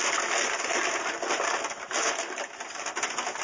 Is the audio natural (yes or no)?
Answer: yes